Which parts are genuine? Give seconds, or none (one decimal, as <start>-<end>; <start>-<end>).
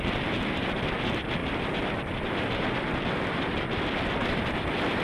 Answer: 0.0-5.0